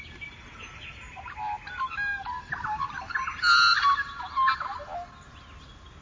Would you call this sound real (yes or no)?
yes